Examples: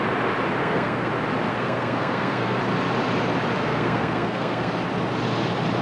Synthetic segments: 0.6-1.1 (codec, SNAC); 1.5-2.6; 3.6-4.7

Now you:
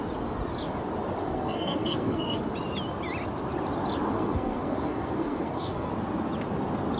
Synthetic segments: 1.2-2.4 (codec, SNAC); 4.1-5.9

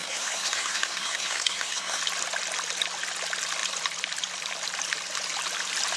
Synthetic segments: 0.0-2.0 (codec, SNAC)

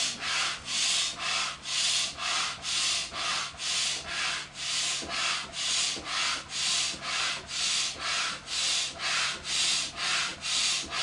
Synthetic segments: none

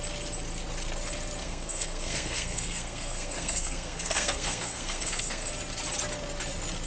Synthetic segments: 1.4-5.5 (codec, SNAC)

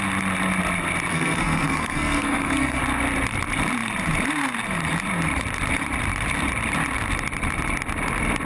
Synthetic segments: 1.1-2.8 (codec, SNAC)

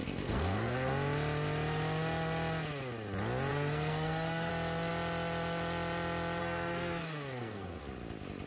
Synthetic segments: 0.0-0.9 (codec, SNAC); 3.5-4.5; 6.4-7.8

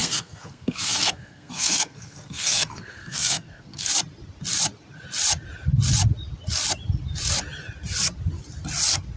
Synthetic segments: 0.0-3.9 (codec, SNAC)